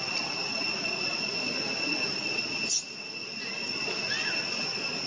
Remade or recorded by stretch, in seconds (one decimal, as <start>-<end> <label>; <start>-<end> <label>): 0.0-0.4 recorded; 0.4-0.9 remade; 0.9-5.1 recorded